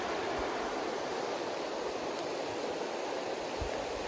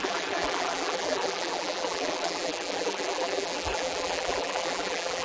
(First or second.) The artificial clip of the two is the second